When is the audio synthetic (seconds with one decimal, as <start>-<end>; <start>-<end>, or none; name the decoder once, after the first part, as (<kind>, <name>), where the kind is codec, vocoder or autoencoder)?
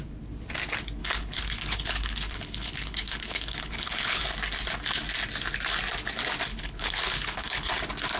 1.0-4.2 (codec, HILCodec); 6.5-7.7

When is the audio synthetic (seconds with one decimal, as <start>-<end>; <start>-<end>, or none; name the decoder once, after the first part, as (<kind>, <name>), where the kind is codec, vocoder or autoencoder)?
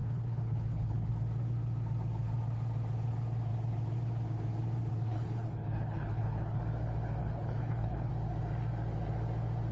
0.0-1.1 (codec, HILCodec); 4.9-6.6; 7.2-8.1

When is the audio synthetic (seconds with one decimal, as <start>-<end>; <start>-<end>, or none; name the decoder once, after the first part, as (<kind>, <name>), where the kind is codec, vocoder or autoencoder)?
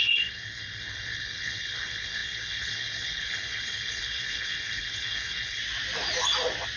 0.0-5.6 (codec, HILCodec)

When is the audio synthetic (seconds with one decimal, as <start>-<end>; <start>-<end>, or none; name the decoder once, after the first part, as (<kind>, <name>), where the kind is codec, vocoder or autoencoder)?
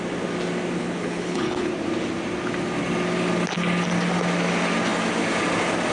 0.8-1.7 (codec, HILCodec)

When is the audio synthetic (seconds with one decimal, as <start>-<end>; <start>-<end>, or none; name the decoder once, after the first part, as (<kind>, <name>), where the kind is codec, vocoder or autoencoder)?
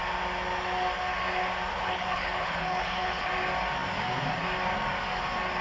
1.7-3.3 (codec, HILCodec)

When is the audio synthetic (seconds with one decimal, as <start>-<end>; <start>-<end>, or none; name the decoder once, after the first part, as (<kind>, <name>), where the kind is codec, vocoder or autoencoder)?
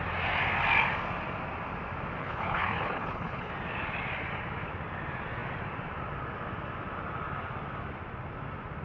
2.2-3.5 (codec, HILCodec)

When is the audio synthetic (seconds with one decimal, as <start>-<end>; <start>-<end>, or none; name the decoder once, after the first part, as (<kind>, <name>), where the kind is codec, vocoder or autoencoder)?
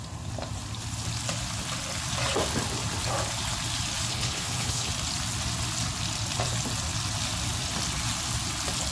4.1-4.9 (codec, HILCodec)